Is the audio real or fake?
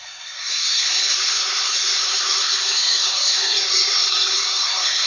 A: fake